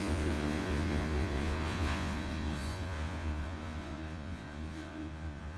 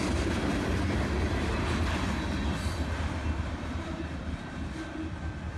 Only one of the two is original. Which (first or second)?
second